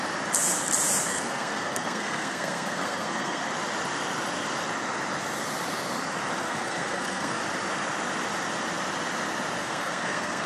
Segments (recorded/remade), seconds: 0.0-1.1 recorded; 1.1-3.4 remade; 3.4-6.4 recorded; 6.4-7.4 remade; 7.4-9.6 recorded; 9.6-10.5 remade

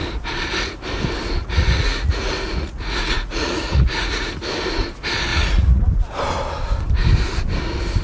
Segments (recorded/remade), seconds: 0.0-1.4 recorded; 1.4-4.3 remade; 4.3-5.3 recorded; 5.3-5.8 remade; 5.8-8.0 recorded

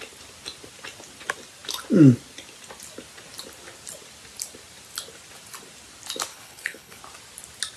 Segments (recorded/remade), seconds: 0.0-6.3 recorded; 6.3-7.0 remade; 7.0-7.8 recorded

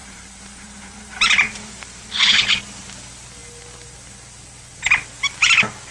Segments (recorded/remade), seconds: 0.0-2.2 remade; 2.2-5.9 recorded

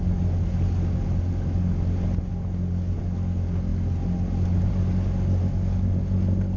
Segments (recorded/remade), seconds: 0.0-6.6 recorded